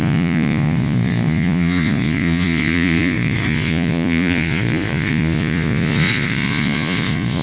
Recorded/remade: remade